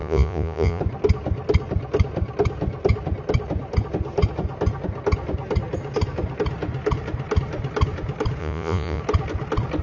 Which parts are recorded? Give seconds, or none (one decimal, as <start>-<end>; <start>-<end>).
0.8-8.4; 9.0-9.8